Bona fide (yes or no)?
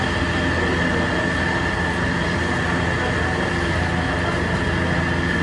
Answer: yes